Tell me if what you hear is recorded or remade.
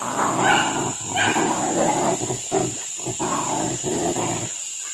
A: recorded